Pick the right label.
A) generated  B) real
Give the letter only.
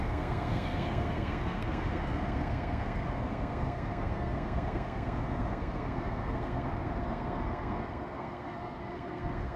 A